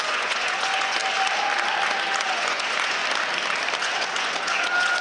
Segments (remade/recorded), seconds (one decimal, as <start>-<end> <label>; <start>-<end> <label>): 0.0-1.0 remade; 1.0-2.2 recorded; 2.2-3.0 remade; 3.0-3.8 recorded; 3.8-5.0 remade